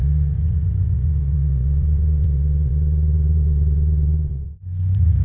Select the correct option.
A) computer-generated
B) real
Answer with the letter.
A